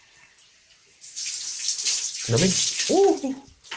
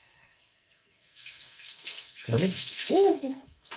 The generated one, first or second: second